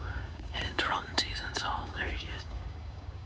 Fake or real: fake